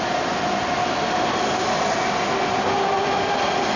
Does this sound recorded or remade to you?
recorded